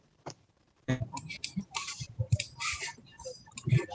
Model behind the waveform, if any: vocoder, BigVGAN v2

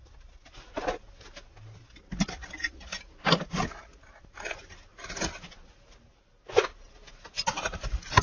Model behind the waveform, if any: none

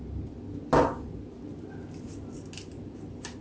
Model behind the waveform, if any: none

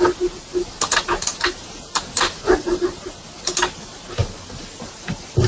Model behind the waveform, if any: none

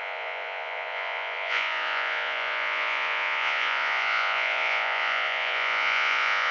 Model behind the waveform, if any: vocoder, Vocos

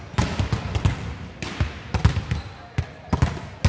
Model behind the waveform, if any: none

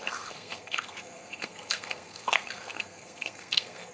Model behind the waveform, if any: codec, SNAC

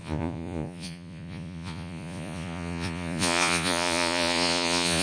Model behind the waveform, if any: vocoder, Vocos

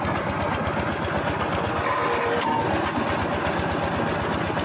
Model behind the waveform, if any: none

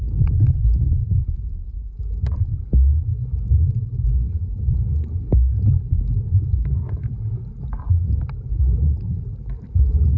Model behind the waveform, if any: none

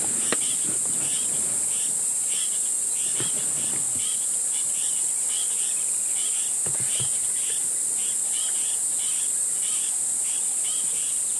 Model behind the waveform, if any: none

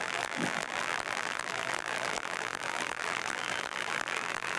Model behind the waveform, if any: vocoder, BigVGAN v2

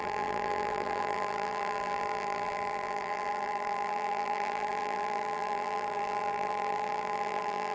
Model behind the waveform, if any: vocoder, BigVGAN v2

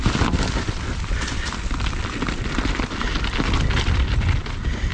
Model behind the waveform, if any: none